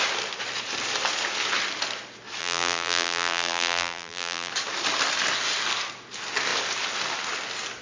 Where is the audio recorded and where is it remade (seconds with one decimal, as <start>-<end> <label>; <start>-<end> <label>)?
0.0-2.4 recorded; 2.4-4.5 remade; 4.5-7.8 recorded